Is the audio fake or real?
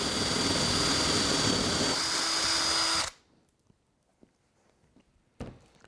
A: real